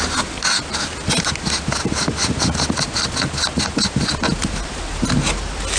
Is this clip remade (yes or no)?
no